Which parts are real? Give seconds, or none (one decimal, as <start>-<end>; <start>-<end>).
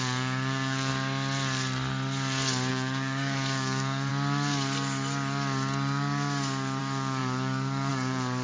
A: 0.9-2.7; 4.1-6.8